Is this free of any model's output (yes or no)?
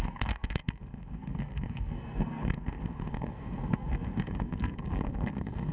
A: no